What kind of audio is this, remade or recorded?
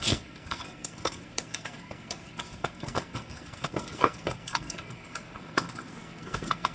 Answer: remade